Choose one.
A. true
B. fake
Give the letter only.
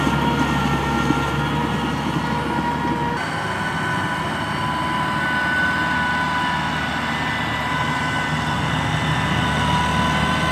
A